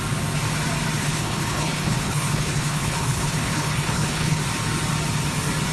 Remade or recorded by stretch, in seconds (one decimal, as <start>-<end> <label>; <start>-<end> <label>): 0.0-1.0 recorded; 1.0-4.4 remade; 4.4-5.7 recorded